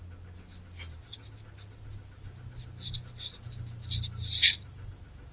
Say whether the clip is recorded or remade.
recorded